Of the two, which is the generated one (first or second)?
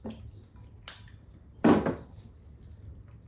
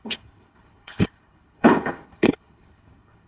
second